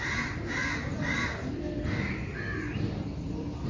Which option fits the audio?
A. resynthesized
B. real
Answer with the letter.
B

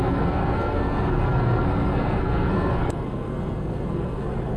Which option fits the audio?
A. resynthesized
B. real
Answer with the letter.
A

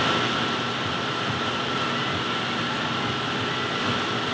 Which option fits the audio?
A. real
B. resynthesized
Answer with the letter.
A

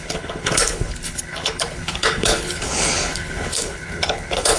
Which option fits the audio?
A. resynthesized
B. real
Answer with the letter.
A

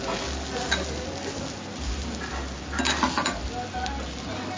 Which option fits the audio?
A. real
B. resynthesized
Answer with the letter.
A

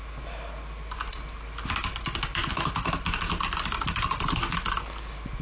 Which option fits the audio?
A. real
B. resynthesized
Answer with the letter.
A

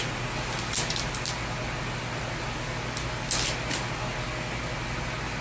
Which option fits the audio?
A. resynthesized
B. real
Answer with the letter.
B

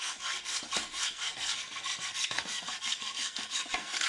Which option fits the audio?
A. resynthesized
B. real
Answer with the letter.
A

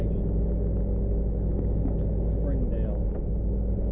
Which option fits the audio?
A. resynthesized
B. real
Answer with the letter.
B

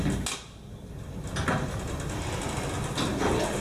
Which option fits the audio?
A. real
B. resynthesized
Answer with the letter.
A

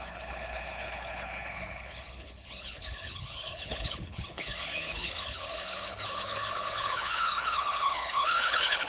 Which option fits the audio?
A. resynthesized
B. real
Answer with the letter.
A